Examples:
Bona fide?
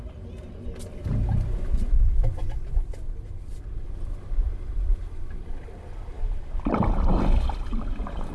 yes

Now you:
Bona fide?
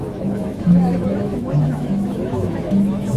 no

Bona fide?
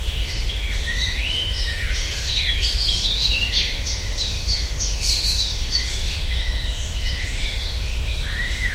no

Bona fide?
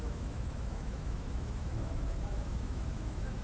no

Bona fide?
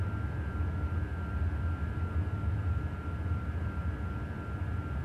yes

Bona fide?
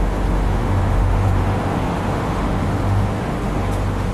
no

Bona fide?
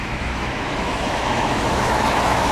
no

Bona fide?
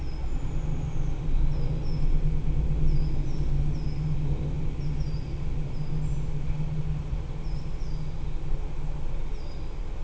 yes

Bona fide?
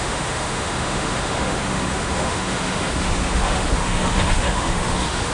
no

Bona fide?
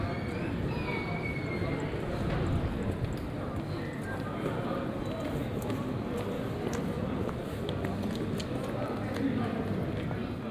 yes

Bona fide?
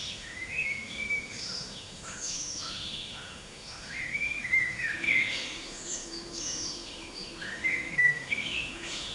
no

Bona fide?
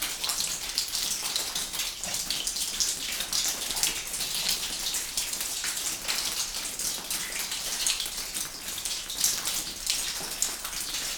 yes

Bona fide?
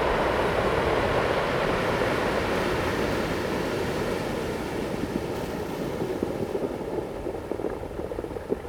yes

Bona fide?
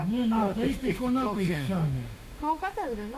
no